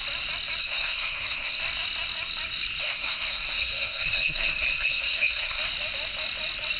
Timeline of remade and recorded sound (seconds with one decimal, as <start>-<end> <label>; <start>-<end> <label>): 0.0-0.6 recorded; 0.6-1.6 remade; 1.6-2.8 recorded; 2.8-5.6 remade; 5.6-6.8 recorded